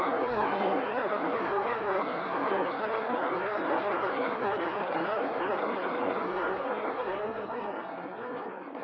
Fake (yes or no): yes